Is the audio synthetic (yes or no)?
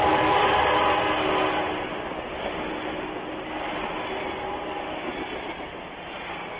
no